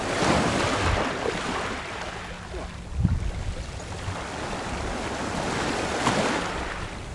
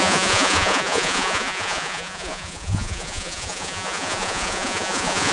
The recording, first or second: first